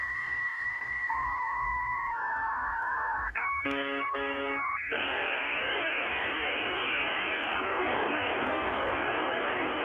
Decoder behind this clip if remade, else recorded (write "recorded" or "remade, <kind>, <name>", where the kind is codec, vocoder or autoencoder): remade, codec, DAC